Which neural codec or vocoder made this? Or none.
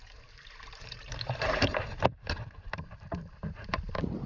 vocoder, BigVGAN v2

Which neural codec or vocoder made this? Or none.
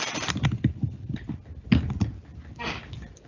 none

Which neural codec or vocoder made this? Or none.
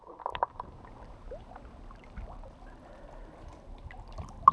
none